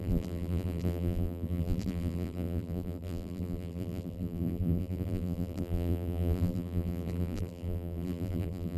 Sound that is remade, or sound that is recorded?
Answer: remade